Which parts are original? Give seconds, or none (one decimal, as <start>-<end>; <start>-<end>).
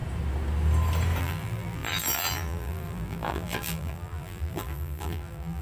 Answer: 0.0-1.2